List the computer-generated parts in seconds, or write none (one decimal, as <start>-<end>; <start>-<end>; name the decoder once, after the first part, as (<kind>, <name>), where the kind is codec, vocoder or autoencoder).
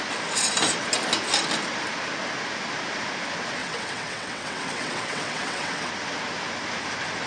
3.6-5.9 (vocoder, WaveNeXt)